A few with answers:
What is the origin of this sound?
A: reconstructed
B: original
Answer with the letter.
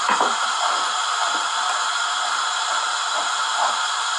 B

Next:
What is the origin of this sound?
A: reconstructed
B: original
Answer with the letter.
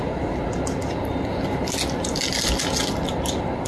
B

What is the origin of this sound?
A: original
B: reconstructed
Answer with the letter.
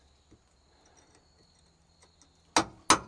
A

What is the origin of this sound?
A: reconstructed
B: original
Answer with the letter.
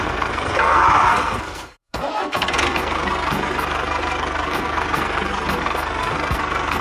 A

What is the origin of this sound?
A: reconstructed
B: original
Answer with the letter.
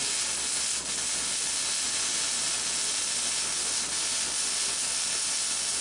B